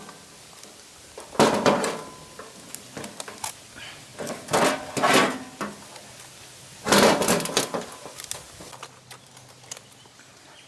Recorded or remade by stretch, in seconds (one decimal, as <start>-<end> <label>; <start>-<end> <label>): 0.0-10.7 recorded